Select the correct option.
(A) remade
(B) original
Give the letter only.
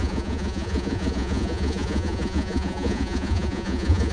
A